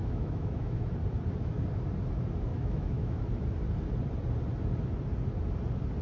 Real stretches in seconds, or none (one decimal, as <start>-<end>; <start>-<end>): 0.8-2.5; 3.2-6.0

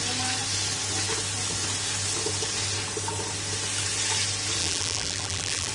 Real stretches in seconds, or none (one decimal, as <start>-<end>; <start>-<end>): 0.0-4.6

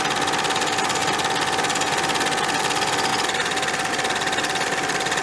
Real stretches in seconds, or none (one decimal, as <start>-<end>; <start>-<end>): 0.0-5.2

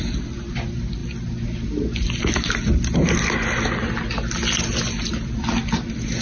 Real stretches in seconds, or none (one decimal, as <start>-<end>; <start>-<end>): 0.0-6.2